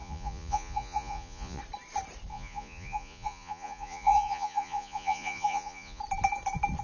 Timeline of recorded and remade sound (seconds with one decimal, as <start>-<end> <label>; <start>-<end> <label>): 0.0-1.6 remade; 1.6-2.3 recorded; 2.3-6.0 remade; 6.0-6.8 recorded